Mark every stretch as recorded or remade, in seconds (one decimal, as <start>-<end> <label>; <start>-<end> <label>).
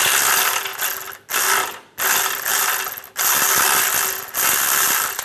0.0-5.2 recorded